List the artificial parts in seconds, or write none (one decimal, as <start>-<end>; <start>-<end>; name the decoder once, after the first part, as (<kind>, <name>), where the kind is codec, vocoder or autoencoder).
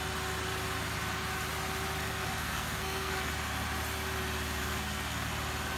2.0-3.3 (codec, SNAC); 4.6-5.3